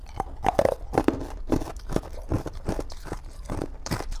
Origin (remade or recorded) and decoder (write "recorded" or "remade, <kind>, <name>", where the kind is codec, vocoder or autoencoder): recorded